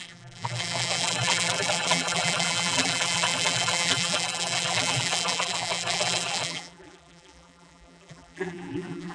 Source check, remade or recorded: remade